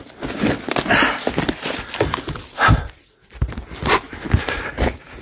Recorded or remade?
recorded